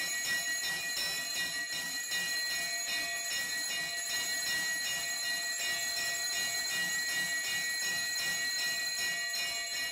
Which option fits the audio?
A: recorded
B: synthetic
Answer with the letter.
A